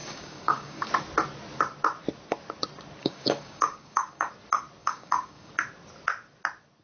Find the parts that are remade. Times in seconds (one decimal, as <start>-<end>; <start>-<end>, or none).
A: 0.0-0.9; 3.0-4.3; 4.8-5.5